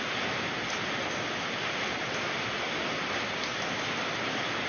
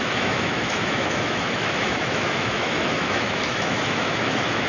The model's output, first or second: second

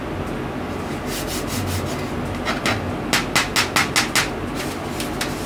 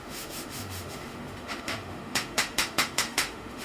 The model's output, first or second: second